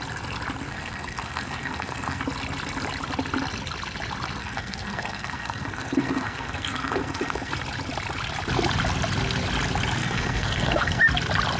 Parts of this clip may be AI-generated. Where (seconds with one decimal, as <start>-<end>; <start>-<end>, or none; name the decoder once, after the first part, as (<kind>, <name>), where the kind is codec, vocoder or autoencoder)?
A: 0.7-2.2 (codec, SNAC); 4.4-7.5; 10.0-11.0